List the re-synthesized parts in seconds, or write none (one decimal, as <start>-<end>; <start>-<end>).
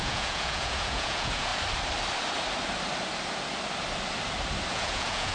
0.0-1.5; 4.7-5.3